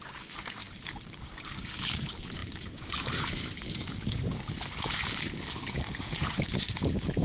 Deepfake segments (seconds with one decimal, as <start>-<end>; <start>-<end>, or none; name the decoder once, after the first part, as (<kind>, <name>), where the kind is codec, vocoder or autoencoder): 0.0-7.2 (codec, DAC)